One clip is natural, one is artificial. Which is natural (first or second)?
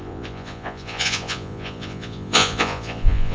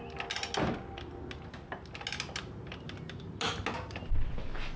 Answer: second